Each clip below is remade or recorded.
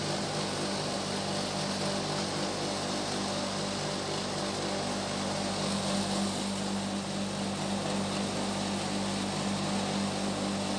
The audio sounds recorded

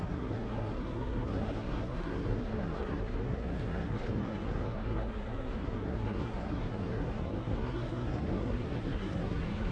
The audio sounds remade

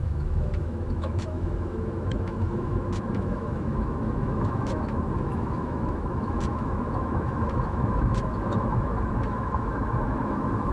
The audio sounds remade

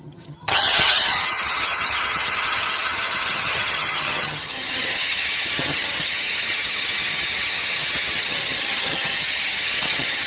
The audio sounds remade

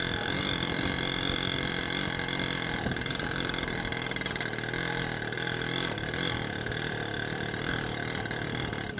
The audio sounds remade